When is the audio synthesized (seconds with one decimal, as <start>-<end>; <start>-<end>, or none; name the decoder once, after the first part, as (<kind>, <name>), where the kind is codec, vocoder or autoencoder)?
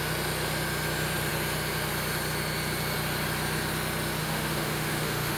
4.2-5.4 (autoencoder, DAC-VAE)